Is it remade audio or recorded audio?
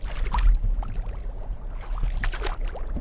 recorded